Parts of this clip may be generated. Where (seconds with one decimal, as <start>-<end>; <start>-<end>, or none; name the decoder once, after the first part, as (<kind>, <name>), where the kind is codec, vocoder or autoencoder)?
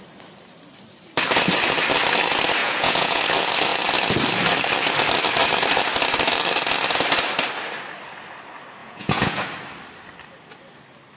2.6-3.2 (vocoder, Vocos); 8.8-9.4